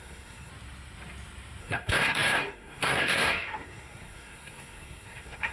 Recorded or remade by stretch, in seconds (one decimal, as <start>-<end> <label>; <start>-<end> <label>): 0.0-0.5 remade; 0.5-1.6 recorded; 1.6-5.5 remade